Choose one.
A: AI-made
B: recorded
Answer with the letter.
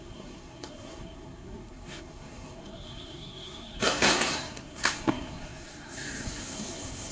A